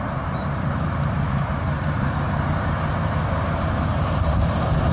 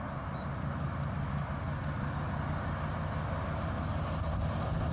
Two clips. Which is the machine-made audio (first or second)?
first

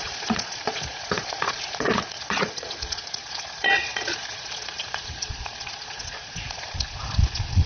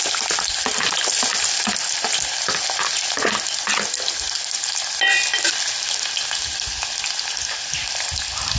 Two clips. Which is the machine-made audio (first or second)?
first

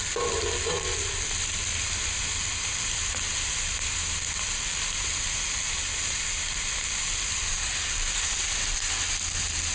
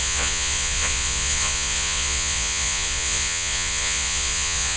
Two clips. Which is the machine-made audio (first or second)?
second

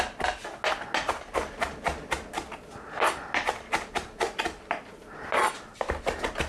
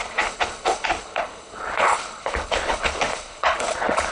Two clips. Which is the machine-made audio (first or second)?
second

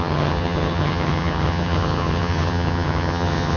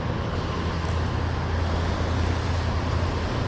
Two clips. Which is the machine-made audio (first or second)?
first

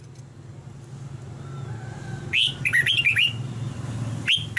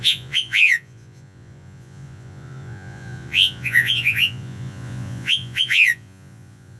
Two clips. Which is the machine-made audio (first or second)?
second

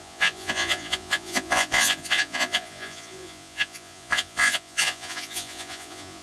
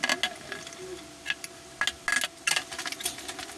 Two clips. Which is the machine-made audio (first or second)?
first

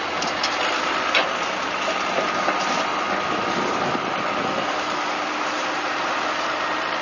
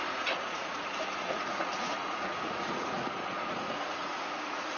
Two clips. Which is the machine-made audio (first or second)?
second